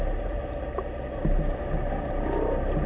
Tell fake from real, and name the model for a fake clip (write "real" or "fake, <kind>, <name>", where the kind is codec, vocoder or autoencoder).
real